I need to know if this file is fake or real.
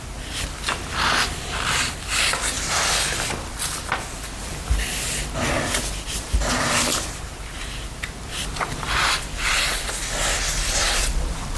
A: real